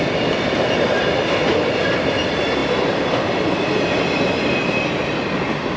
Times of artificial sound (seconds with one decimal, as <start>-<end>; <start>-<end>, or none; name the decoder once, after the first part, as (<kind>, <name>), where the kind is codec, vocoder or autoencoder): none